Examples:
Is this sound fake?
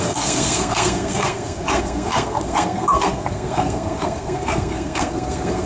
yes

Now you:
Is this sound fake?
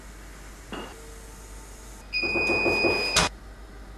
no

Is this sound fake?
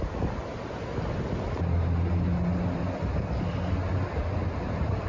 no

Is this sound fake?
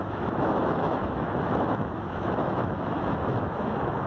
yes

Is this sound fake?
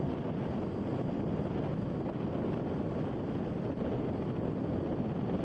no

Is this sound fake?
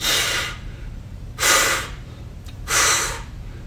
yes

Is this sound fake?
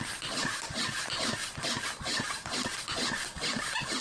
no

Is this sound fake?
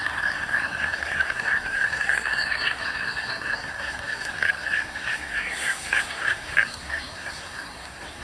yes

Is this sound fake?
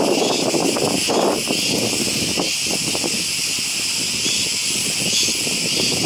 no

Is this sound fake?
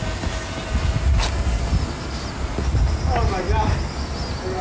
no